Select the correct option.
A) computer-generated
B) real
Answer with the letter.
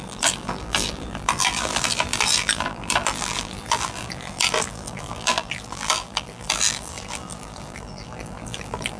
A